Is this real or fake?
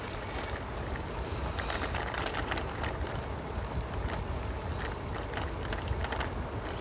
real